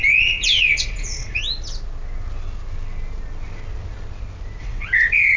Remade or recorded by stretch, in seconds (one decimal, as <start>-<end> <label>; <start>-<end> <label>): 0.0-1.4 remade; 1.4-4.6 recorded; 4.6-5.4 remade